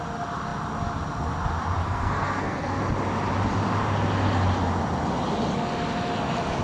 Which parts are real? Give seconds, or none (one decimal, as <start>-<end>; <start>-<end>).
0.0-1.8; 2.8-6.6